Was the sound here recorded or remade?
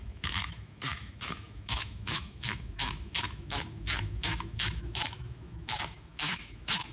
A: remade